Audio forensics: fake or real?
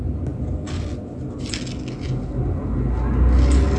real